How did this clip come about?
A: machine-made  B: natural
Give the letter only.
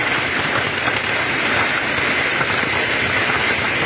A